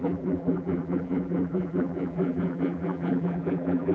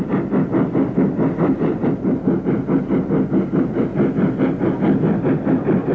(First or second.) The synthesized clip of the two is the first